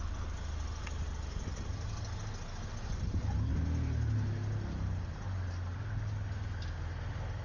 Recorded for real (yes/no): yes